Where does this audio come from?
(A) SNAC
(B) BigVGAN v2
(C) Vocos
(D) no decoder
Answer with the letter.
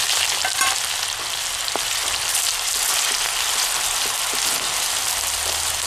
D